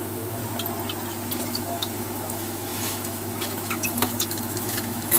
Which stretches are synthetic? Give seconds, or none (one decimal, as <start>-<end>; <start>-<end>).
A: 0.0-0.4; 1.4-5.2